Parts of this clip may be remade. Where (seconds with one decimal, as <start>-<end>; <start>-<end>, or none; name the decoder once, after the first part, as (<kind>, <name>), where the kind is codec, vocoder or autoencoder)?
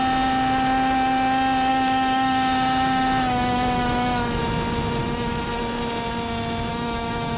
1.7-4.4 (autoencoder, DAC-VAE); 5.0-5.6; 6.7-7.4